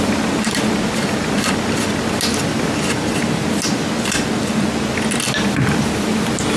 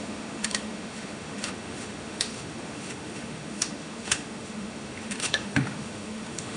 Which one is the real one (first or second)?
first